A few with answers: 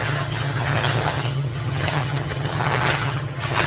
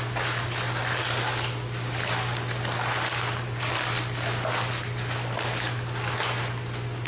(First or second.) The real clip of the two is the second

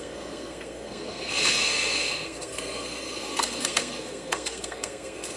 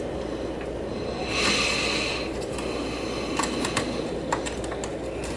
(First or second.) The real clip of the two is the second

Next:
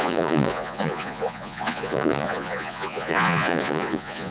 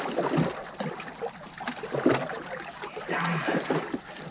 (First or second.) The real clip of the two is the second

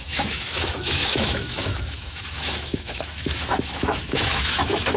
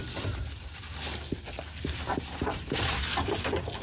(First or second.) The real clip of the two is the second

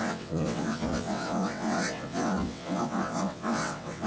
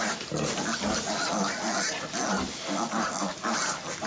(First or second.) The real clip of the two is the second